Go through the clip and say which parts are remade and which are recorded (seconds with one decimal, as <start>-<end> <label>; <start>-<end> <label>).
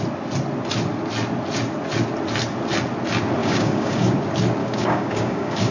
0.0-3.4 recorded; 3.4-4.1 remade; 4.1-4.6 recorded; 4.6-5.7 remade